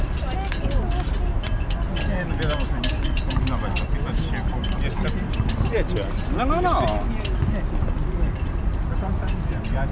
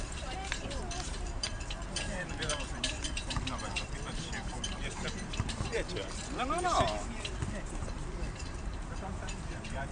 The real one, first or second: first